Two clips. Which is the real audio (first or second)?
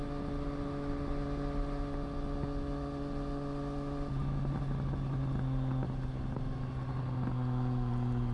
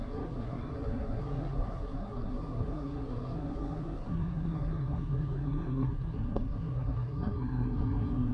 first